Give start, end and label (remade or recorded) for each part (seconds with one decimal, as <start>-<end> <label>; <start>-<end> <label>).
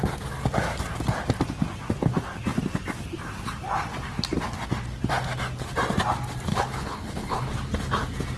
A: 0.0-6.5 recorded; 6.5-7.5 remade; 7.5-8.4 recorded